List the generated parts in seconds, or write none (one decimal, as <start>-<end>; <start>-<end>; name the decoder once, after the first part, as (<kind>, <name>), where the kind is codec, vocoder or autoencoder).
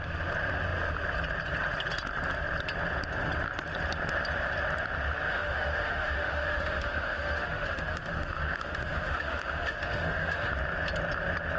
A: 5.3-10.5 (autoencoder, DAC-VAE)